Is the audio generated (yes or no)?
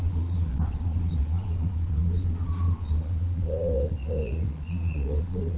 yes